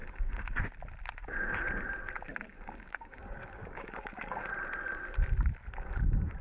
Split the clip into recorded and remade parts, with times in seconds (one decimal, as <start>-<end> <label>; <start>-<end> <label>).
0.0-0.6 remade; 0.6-2.5 recorded; 2.5-4.5 remade; 4.5-6.4 recorded

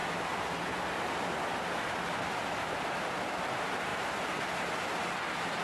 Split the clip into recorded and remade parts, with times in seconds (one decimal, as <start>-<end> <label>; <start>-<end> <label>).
0.0-5.6 recorded